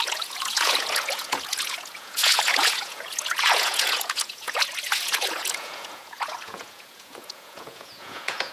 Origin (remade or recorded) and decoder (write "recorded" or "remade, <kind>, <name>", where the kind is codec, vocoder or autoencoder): remade, vocoder, Vocos